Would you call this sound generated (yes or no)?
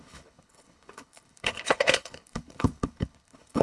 yes